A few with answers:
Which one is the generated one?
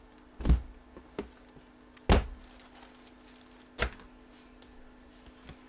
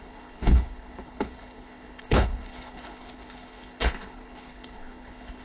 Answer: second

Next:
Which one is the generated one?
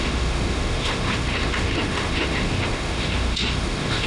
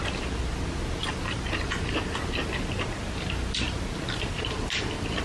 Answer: first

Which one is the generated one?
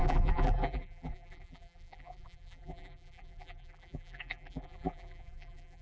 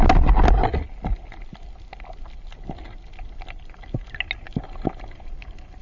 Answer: first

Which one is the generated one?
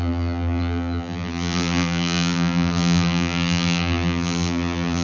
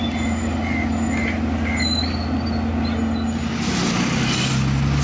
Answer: first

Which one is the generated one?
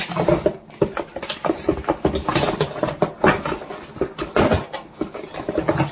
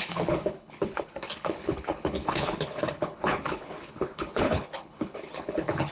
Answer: second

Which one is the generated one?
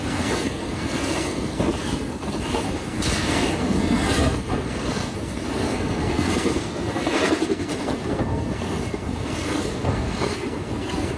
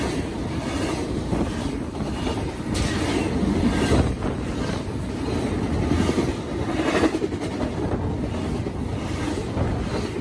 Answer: first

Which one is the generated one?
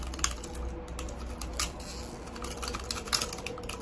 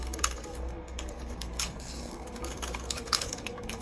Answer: second